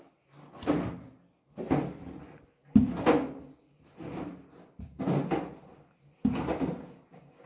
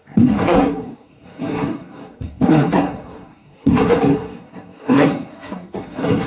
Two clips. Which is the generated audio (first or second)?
second